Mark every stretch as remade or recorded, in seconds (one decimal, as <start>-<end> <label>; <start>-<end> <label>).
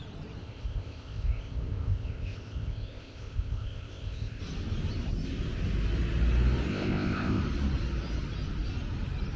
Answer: 0.0-0.4 recorded; 0.4-4.4 remade; 4.4-6.7 recorded; 6.7-7.4 remade; 7.4-9.4 recorded